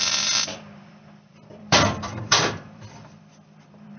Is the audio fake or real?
fake